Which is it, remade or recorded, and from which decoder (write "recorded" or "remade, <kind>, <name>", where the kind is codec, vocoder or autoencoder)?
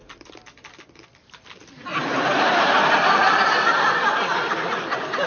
recorded